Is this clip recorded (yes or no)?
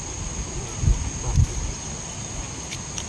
yes